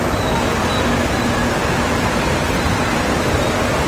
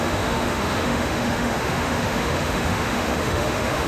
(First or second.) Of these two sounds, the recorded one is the first